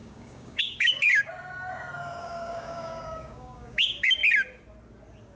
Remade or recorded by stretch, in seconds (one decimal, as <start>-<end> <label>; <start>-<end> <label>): 0.0-1.3 remade; 1.3-2.2 recorded; 2.2-4.2 remade; 4.2-5.4 recorded